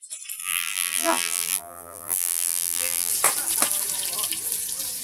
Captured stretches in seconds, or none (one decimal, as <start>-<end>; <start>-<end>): 0.0-0.4; 3.1-5.0